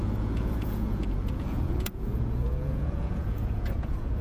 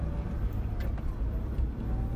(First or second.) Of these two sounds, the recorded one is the second